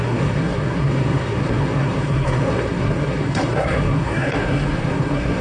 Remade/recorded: remade